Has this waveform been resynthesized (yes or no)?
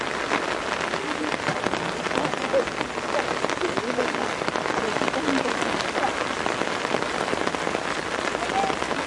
no